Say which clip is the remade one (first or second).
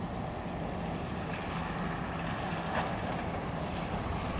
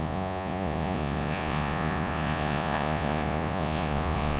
second